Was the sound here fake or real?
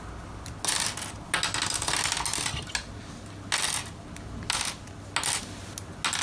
real